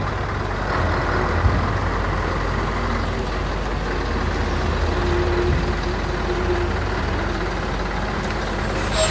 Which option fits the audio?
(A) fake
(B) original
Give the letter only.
B